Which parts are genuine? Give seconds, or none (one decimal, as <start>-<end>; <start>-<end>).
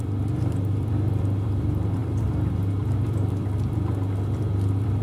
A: none